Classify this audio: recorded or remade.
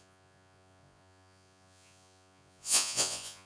remade